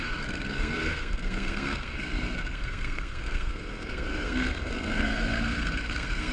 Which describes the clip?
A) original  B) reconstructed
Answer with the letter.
B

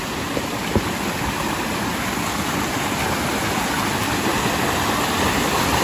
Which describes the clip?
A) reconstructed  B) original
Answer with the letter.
B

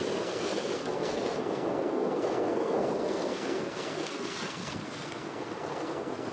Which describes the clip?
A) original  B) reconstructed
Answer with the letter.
B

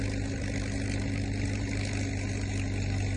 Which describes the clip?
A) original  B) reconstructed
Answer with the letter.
A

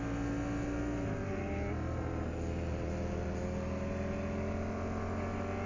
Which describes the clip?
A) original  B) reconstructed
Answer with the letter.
A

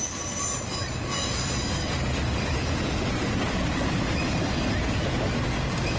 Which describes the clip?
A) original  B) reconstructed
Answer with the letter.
A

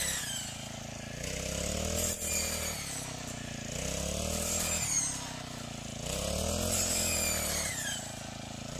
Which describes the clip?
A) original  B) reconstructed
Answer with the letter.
A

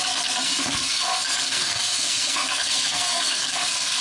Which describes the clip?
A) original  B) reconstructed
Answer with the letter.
B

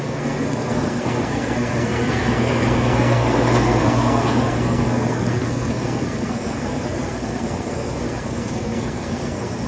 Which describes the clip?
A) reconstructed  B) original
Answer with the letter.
A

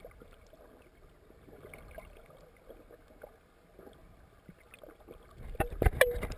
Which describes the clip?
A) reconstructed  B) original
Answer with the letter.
B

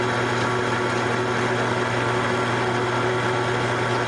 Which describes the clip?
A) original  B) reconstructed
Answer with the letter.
A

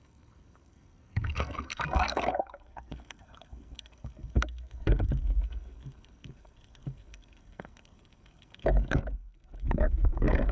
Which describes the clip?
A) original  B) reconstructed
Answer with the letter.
B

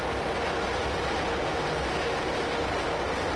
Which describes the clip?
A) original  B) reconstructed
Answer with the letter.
A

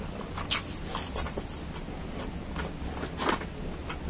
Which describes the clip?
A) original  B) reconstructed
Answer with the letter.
A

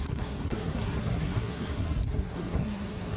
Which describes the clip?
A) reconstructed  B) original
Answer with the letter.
A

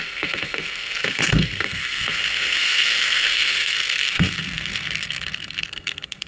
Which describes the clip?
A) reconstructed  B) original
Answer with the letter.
A